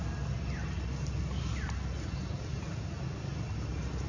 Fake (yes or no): no